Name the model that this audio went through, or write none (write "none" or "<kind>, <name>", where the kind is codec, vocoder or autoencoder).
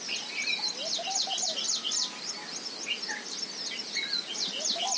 none